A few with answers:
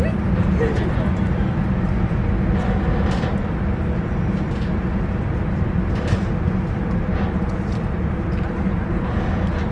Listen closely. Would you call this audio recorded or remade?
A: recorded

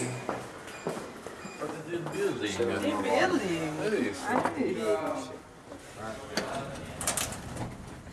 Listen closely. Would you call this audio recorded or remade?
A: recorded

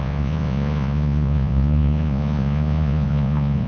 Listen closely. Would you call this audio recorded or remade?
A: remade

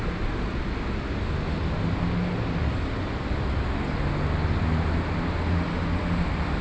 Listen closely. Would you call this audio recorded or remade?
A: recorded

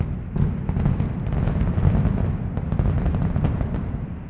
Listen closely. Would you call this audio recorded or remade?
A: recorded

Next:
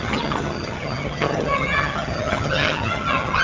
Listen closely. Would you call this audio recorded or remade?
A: remade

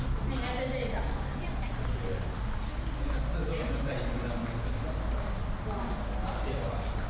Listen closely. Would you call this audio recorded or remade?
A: recorded